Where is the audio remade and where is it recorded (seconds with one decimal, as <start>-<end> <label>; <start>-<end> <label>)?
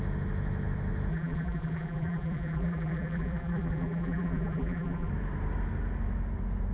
0.0-1.1 recorded; 1.1-5.1 remade; 5.1-6.7 recorded